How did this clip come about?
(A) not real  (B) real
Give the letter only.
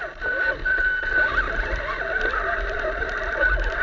A